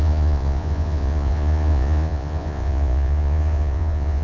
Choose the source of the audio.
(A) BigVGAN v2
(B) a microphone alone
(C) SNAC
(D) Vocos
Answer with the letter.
D